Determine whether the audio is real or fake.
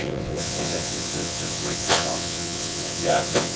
fake